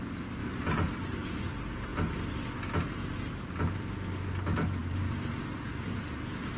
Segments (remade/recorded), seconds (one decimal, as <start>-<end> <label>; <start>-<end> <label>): 0.0-0.4 recorded; 0.4-1.5 remade; 1.5-4.8 recorded; 4.8-6.6 remade